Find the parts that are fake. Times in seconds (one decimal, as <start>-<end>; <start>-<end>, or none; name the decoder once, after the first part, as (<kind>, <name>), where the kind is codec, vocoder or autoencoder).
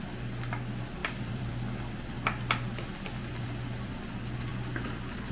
1.0-1.5 (vocoder, BigVGAN v2); 3.2-4.0